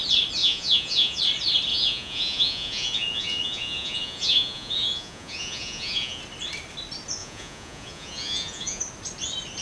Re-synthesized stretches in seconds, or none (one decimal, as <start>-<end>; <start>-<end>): 0.4-1.2; 1.7-6.2; 7.2-8.8